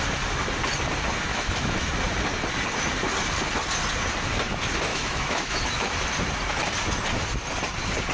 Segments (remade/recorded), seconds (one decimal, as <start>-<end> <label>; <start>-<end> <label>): 0.0-1.3 recorded; 1.3-1.9 remade; 1.9-4.9 recorded; 4.9-5.9 remade; 5.9-8.1 recorded